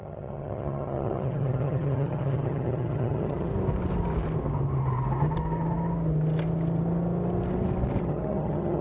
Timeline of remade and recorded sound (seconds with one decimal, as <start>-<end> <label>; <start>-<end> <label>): 0.0-3.5 remade; 3.5-8.0 recorded; 8.0-8.8 remade